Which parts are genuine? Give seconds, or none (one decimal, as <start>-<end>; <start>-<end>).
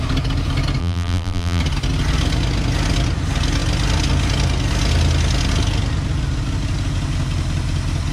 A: 0.0-0.8; 1.6-8.1